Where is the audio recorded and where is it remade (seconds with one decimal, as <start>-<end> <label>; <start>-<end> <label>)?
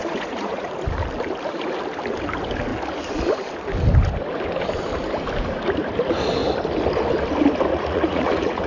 0.0-0.7 remade; 0.7-7.7 recorded; 7.7-8.7 remade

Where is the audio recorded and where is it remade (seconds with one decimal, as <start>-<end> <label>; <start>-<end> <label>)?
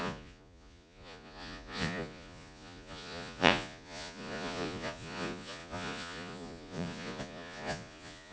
0.0-8.3 remade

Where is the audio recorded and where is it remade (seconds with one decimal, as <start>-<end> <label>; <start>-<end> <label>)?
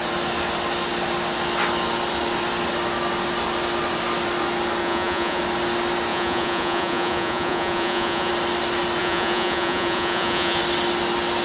0.0-4.8 recorded; 4.8-5.4 remade; 5.4-6.1 recorded; 6.1-8.3 remade; 8.3-9.0 recorded; 9.0-10.6 remade; 10.6-11.4 recorded